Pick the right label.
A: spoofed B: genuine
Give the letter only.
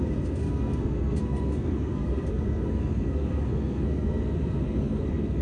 A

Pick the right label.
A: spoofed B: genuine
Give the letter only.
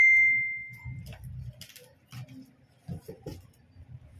B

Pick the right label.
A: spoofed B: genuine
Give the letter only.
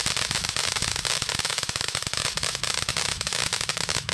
A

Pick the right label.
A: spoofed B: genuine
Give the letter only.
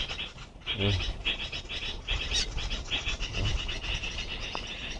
A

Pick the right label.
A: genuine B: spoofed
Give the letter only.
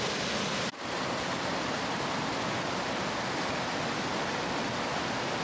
A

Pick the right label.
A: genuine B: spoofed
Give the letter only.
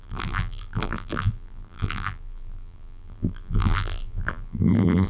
B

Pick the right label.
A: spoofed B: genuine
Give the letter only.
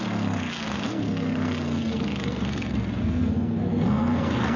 A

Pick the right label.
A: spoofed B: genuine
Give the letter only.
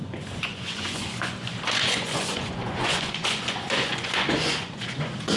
A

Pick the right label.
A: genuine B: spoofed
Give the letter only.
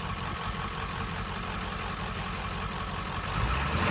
A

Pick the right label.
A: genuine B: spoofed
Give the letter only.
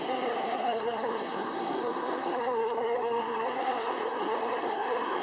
B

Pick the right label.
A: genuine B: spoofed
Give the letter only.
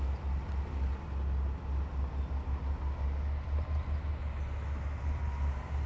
A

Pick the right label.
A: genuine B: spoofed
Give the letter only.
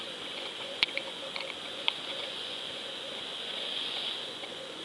B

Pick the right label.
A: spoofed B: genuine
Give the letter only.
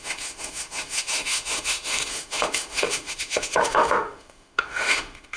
A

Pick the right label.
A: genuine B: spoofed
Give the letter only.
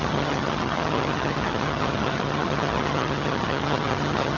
B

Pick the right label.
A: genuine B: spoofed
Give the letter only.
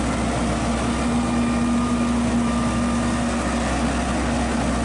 A